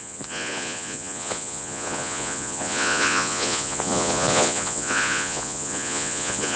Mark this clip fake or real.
fake